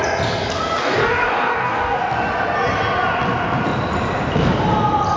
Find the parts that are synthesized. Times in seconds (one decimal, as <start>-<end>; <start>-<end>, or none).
0.8-2.0